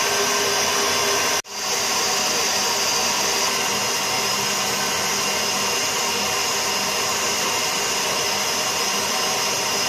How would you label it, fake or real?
real